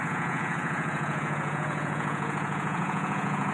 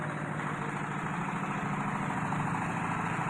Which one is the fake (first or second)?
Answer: first